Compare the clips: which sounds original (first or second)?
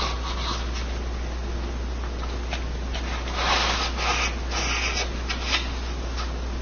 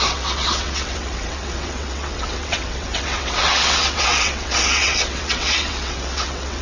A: first